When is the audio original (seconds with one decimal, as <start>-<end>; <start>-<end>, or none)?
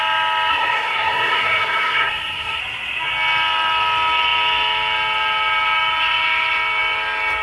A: 0.0-0.5; 2.6-7.4